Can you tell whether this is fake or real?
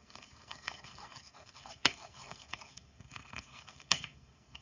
fake